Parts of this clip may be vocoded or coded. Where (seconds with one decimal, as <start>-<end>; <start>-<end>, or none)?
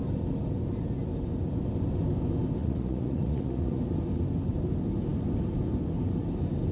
2.6-3.8